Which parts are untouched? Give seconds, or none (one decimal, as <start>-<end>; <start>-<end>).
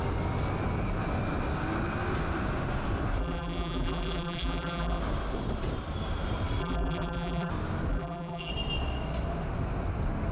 0.0-3.2; 5.0-6.6; 7.5-7.9; 8.5-10.3